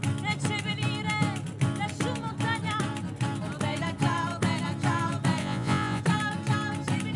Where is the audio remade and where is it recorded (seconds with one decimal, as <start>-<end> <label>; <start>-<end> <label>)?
0.0-5.4 recorded; 5.4-6.0 remade; 6.0-7.2 recorded